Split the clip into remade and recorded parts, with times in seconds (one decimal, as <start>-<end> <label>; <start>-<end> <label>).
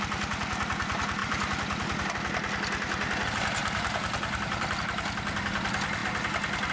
0.0-1.2 recorded; 1.2-2.1 remade; 2.1-3.6 recorded; 3.6-4.8 remade; 4.8-6.7 recorded